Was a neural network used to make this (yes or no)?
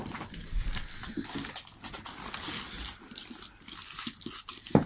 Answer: no